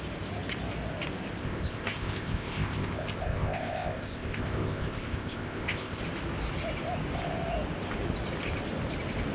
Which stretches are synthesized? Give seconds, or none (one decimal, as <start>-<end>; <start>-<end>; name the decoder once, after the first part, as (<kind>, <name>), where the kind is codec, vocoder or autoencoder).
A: 1.4-6.0 (codec, ZipCodec)